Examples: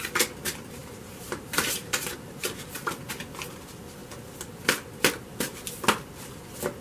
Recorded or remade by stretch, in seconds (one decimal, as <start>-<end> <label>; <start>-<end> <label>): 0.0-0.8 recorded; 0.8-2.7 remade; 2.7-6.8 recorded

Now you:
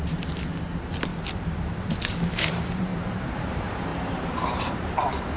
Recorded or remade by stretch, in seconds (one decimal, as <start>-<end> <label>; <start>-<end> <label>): 0.0-1.1 remade; 1.1-2.1 recorded; 2.1-2.9 remade; 2.9-3.5 recorded; 3.5-5.4 remade

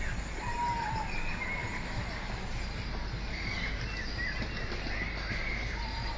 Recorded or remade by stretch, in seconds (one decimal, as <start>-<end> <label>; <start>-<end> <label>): 0.0-6.2 recorded